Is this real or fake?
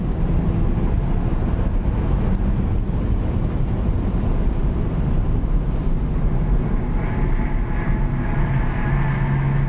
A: real